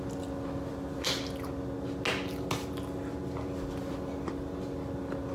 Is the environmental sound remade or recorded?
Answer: recorded